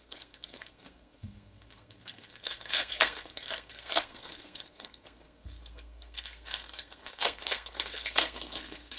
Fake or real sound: fake